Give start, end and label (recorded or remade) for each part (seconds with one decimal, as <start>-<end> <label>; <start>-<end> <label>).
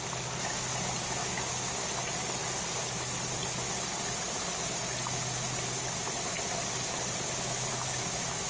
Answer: 0.0-1.2 recorded; 1.2-1.9 remade; 1.9-7.7 recorded; 7.7-8.5 remade